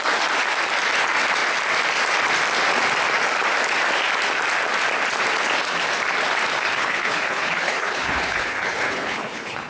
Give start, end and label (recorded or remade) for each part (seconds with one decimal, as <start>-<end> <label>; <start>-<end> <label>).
0.0-6.7 recorded; 6.7-9.7 remade